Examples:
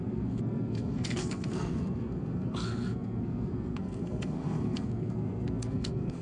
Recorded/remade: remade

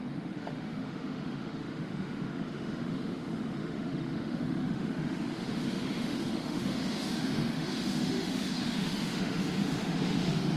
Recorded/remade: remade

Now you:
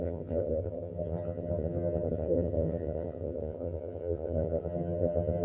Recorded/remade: remade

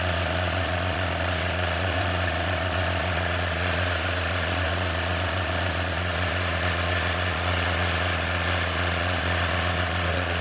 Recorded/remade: remade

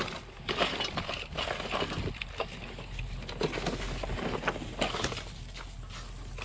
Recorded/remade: recorded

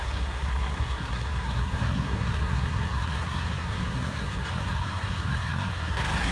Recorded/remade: remade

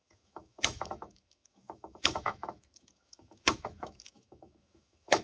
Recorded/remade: remade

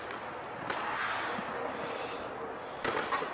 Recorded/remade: recorded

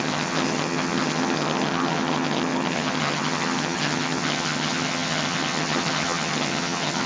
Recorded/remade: remade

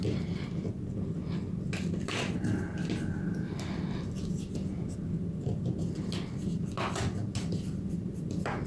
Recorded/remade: recorded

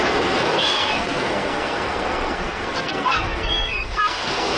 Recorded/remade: remade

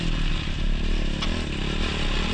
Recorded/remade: recorded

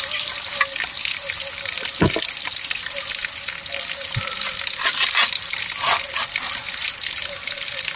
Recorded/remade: recorded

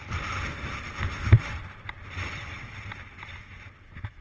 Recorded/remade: recorded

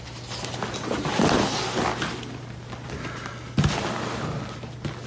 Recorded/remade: recorded